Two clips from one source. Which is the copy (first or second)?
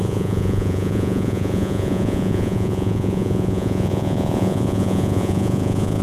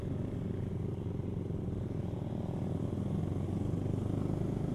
first